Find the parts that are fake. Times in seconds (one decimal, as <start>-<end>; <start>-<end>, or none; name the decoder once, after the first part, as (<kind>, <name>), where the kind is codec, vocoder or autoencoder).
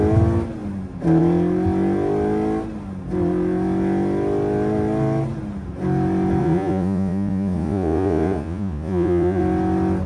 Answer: 6.4-9.4 (vocoder, Vocos)